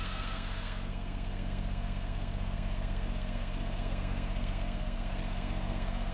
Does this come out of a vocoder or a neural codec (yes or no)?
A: yes